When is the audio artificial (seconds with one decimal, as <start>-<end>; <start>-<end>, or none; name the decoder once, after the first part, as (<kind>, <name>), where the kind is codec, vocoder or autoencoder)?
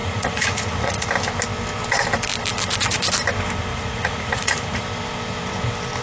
0.0-1.1 (vocoder, Vocos); 3.7-4.8